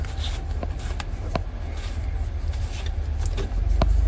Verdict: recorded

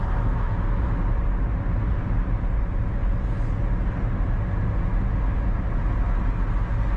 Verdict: recorded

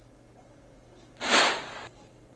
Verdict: recorded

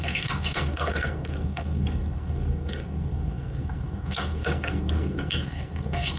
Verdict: remade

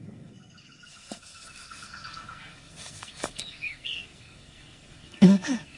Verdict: remade